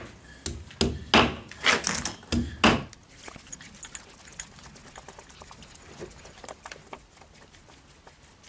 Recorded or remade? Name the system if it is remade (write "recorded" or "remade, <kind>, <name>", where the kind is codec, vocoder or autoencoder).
recorded